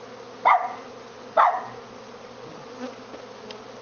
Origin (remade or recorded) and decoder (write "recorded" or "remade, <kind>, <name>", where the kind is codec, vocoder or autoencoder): recorded